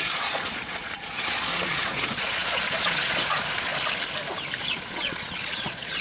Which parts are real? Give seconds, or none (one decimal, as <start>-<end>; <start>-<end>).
3.7-4.6